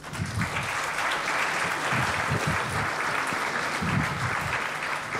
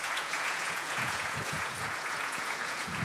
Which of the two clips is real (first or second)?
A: first